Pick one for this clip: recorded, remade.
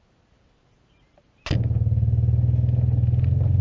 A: recorded